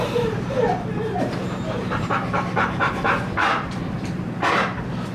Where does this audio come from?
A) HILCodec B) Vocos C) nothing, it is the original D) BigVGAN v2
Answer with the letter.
D